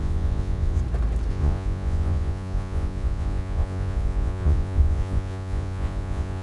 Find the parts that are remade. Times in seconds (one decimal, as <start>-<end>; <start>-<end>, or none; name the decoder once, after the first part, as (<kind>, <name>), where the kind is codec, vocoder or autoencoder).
0.0-0.8 (vocoder, Vocos); 1.3-6.4